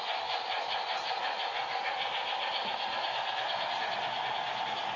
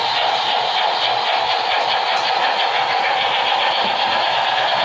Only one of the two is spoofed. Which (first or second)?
second